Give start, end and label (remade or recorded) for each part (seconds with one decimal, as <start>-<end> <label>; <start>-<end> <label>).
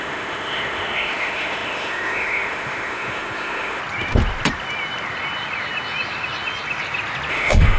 0.0-3.8 remade; 3.8-7.3 recorded; 7.3-7.8 remade